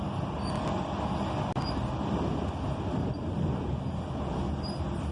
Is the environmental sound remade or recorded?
recorded